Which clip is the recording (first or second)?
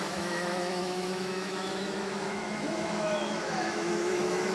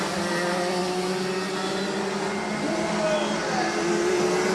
second